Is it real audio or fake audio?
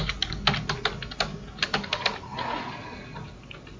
real